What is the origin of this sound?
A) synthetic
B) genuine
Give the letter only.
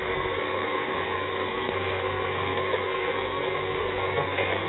A